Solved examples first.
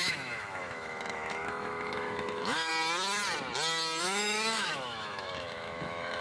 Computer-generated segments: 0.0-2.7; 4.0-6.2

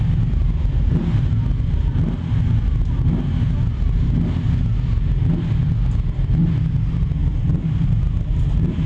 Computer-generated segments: none

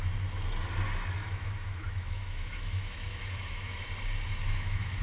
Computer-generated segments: 1.2-3.8; 4.4-5.0

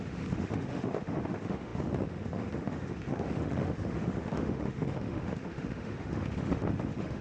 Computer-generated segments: 0.0-7.2

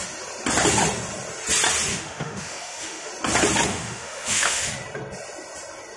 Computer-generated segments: 1.9-3.1; 3.7-4.7